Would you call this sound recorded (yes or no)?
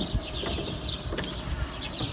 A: yes